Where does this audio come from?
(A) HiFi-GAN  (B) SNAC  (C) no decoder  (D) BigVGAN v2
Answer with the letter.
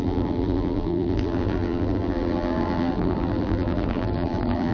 D